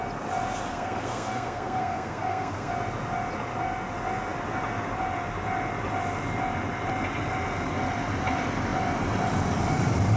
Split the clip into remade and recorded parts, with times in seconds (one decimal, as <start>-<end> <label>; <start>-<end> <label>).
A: 0.0-0.7 recorded; 0.7-2.7 remade; 2.7-10.2 recorded